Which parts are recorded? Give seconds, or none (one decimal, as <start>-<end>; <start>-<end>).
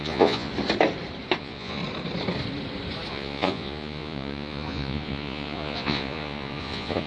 0.5-1.4; 1.8-3.1